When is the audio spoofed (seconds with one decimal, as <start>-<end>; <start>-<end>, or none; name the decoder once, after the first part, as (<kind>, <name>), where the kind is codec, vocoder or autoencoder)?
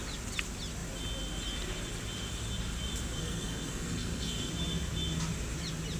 3.2-4.5 (codec, SNAC)